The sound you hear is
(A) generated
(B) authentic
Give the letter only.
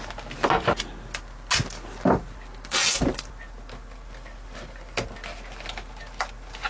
B